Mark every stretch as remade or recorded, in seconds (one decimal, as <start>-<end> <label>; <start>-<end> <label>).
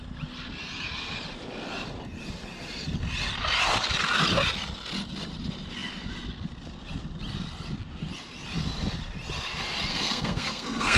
0.0-9.9 recorded; 9.9-11.0 remade